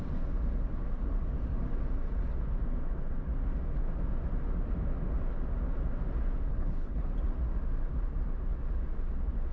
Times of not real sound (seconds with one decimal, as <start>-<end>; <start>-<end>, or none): 6.5-7.1